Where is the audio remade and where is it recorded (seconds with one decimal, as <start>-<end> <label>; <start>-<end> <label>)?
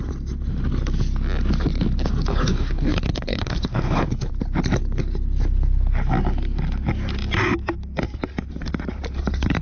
0.0-2.3 recorded; 2.3-4.3 remade; 4.3-9.6 recorded